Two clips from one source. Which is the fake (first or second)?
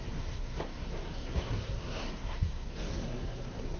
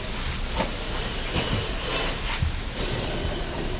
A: first